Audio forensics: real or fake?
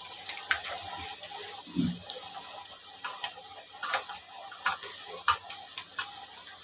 real